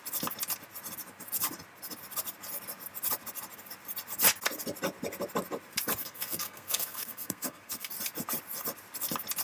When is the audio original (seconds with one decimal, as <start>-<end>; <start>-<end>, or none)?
0.0-6.0; 7.9-9.4

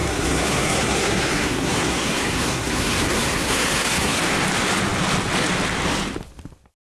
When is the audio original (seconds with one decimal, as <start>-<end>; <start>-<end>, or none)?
4.2-7.0